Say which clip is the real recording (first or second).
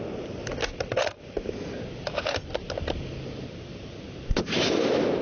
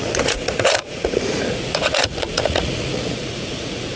first